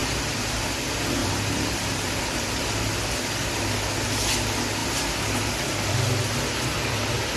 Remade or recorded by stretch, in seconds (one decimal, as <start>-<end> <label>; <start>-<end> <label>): 0.0-0.6 remade; 0.6-1.2 recorded; 1.2-2.9 remade; 2.9-7.4 recorded

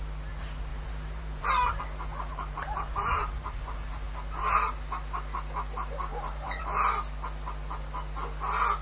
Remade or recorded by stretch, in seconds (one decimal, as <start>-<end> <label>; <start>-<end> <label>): 0.0-0.7 recorded; 0.7-1.8 remade; 1.8-2.3 recorded; 2.3-3.7 remade; 3.7-6.1 recorded; 6.1-6.6 remade; 6.6-8.8 recorded

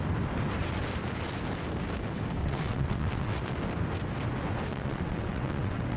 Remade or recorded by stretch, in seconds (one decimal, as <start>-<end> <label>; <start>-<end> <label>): 0.0-2.4 recorded; 2.4-3.5 remade; 3.5-4.7 recorded; 4.7-6.0 remade